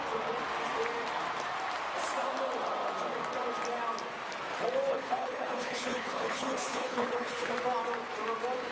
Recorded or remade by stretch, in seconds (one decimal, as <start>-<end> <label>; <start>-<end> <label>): 0.0-4.9 recorded; 4.9-7.5 remade; 7.5-8.7 recorded